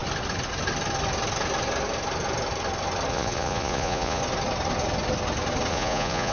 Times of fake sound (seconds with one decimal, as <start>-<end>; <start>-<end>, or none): 3.1-4.2; 5.7-6.3